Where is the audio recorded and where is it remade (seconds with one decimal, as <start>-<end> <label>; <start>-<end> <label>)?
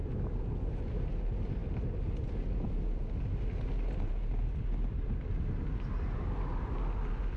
0.0-7.4 recorded